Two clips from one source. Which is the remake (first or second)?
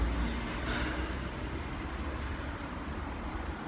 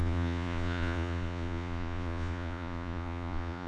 second